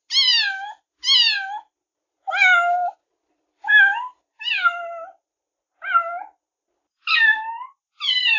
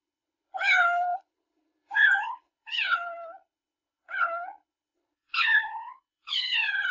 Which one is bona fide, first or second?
first